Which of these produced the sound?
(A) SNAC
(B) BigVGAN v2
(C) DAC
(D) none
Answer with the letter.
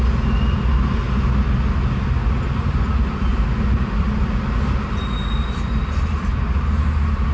D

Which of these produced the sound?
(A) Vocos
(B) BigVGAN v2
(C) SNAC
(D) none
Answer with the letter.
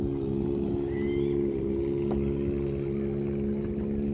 D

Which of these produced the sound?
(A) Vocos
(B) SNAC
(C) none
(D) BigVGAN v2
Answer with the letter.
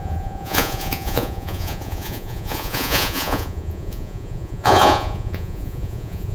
A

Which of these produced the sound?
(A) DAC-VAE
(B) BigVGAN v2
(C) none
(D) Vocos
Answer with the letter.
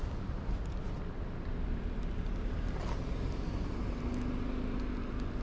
C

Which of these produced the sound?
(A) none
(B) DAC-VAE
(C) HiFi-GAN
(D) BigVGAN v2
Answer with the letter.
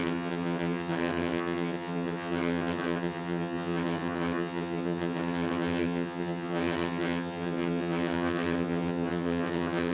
C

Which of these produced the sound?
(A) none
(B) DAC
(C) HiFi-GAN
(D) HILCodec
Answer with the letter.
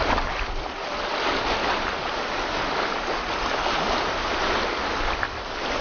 A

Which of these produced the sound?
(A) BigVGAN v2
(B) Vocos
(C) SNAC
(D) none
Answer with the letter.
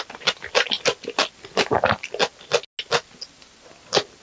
D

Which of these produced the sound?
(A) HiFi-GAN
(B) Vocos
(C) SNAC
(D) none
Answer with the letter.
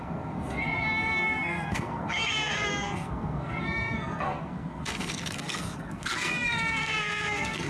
C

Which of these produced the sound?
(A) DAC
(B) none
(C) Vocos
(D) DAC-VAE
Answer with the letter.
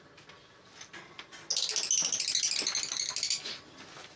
B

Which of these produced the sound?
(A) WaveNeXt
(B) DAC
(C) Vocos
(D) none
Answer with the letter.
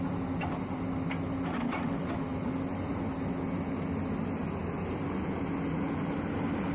D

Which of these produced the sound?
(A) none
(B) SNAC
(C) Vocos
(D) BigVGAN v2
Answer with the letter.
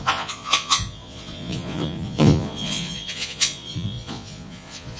C